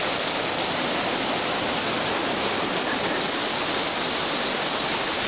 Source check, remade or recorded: remade